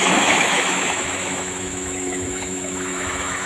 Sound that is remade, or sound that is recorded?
remade